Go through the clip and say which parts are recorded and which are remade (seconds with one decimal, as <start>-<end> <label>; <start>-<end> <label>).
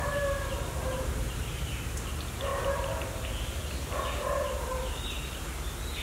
0.0-0.9 recorded; 0.9-1.4 remade; 1.4-2.5 recorded; 2.5-3.0 remade; 3.0-3.6 recorded; 3.6-4.9 remade; 4.9-6.0 recorded